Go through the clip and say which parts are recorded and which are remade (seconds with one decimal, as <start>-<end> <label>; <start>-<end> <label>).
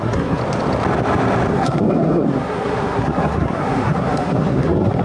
0.0-0.4 remade; 0.4-1.5 recorded; 1.5-5.0 remade